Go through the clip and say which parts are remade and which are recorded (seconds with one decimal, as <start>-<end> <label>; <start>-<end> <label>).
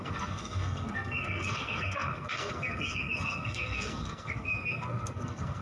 0.0-5.6 remade